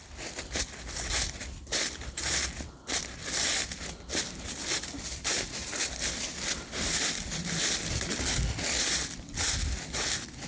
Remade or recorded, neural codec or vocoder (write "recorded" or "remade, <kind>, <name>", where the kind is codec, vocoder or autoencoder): recorded